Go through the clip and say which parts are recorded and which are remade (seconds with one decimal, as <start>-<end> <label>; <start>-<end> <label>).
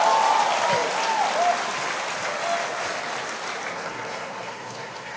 0.0-3.7 recorded; 3.7-5.2 remade